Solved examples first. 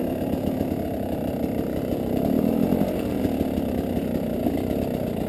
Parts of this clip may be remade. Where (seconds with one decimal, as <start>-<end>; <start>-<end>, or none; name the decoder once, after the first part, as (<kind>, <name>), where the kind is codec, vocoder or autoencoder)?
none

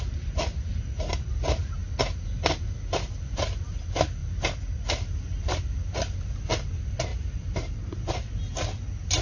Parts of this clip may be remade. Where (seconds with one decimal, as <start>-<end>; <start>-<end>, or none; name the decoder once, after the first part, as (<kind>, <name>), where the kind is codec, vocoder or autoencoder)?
7.1-8.3 (vocoder, BigVGAN v2)

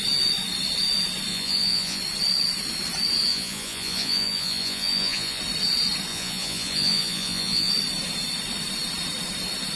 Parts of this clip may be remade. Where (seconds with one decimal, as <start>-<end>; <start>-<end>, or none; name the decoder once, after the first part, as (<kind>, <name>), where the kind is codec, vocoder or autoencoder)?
1.3-2.0 (vocoder, Vocos); 3.3-5.4; 6.1-7.7

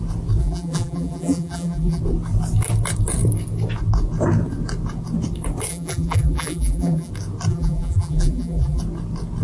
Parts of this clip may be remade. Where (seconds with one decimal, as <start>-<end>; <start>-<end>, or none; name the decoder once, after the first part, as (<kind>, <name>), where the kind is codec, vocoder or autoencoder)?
0.4-2.0 (vocoder, BigVGAN v2); 5.7-7.1; 7.5-8.8

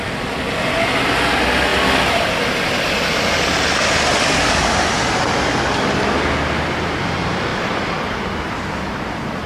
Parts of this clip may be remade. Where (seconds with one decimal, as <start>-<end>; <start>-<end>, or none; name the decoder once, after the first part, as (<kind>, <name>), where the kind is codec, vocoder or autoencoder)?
none